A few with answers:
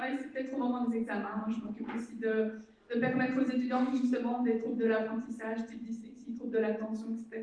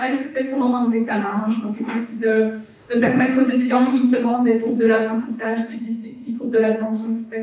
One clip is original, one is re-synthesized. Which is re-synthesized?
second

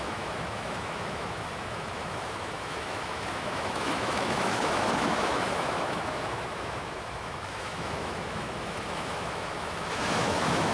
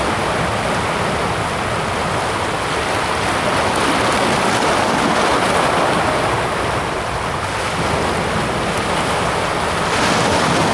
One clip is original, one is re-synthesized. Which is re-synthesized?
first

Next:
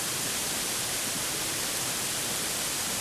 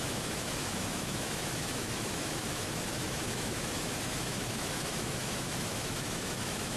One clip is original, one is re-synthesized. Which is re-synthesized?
second